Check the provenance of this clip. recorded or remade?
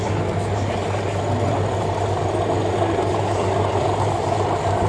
recorded